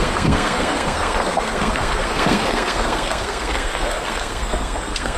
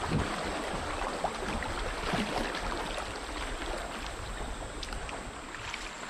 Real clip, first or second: second